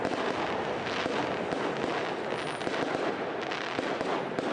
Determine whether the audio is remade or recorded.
recorded